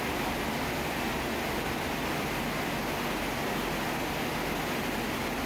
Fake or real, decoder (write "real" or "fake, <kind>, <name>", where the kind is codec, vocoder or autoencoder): real